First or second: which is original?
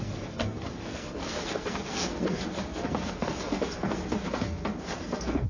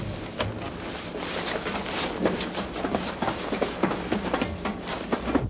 second